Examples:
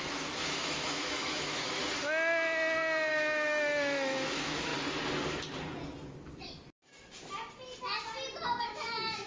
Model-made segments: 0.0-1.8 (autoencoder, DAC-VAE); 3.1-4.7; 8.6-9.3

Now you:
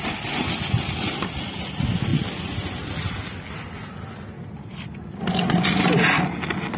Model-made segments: none

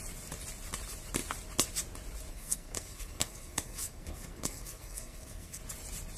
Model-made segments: 2.3-5.6 (codec, SNAC)

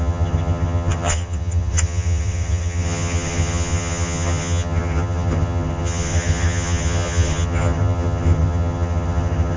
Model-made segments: 0.0-9.6 (vocoder, HiFi-GAN)

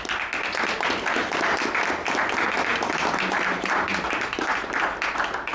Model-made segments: 2.7-5.5 (vocoder, BigVGAN v2)

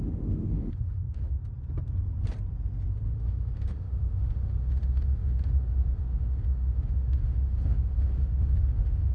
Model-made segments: 0.0-1.4 (autoencoder, DAC-VAE); 2.9-9.1

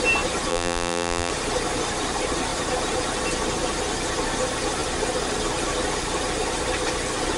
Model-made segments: 0.5-1.3 (vocoder, BigVGAN v2)

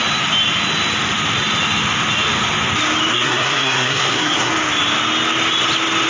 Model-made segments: 3.1-4.5 (codec, SNAC)